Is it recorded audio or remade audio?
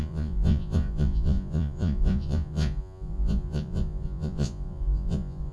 remade